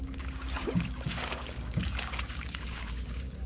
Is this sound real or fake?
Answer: fake